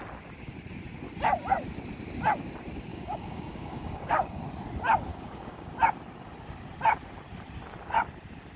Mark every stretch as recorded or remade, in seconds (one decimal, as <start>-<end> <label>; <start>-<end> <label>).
0.0-2.9 recorded; 2.9-4.4 remade; 4.4-5.1 recorded; 5.1-5.7 remade; 5.7-8.6 recorded